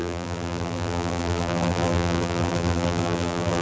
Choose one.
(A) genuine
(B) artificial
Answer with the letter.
B